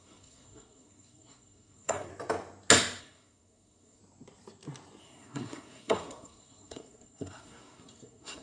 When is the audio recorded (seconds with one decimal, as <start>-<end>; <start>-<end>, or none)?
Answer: 2.1-3.0; 4.0-5.0